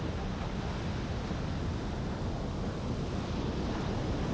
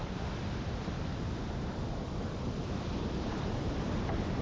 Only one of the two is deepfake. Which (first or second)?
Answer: second